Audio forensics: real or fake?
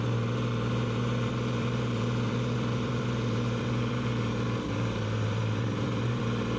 fake